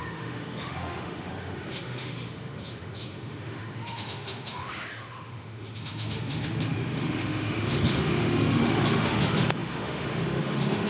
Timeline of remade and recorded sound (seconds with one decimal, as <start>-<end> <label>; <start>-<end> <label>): 0.0-10.9 remade

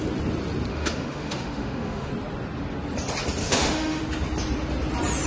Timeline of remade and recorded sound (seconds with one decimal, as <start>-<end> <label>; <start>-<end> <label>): 0.0-0.7 recorded; 0.7-2.1 remade; 2.1-3.4 recorded; 3.4-4.0 remade; 4.0-5.3 recorded